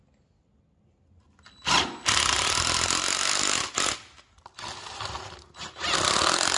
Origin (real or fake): real